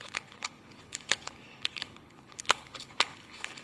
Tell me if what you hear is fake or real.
fake